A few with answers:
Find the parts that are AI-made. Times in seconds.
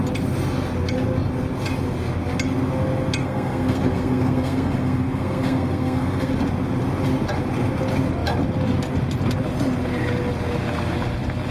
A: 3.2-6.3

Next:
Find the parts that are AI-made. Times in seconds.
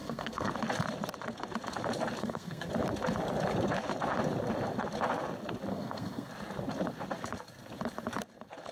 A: 0.0-0.5; 2.2-2.7; 5.7-6.3